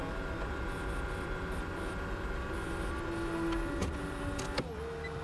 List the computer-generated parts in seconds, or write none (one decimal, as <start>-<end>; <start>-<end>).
none